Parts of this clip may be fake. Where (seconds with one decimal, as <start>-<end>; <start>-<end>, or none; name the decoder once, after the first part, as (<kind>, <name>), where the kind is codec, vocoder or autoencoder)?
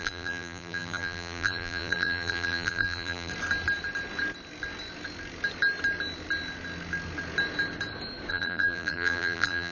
0.0-3.3 (vocoder, BigVGAN v2); 8.3-9.7